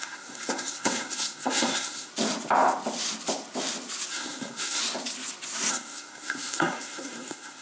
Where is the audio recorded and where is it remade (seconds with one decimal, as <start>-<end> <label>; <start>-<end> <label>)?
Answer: 0.0-2.1 remade; 2.1-4.1 recorded; 4.1-4.8 remade; 4.8-5.7 recorded; 5.7-7.6 remade